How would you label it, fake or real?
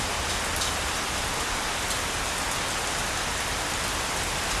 real